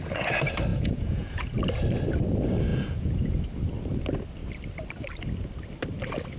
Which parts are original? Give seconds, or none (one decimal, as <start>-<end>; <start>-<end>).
0.0-0.7; 1.4-2.7; 3.4-6.4